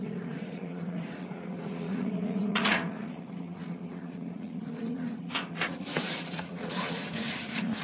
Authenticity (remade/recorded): remade